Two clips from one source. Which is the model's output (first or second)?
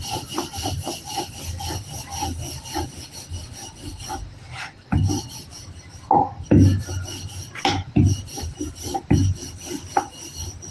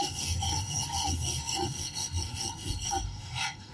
second